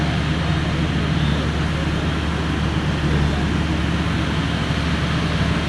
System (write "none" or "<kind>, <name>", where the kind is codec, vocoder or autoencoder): none